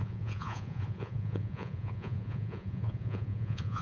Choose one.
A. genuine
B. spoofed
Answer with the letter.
B